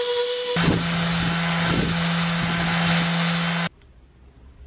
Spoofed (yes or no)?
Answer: no